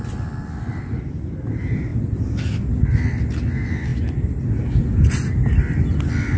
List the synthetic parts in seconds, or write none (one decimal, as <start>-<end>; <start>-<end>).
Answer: none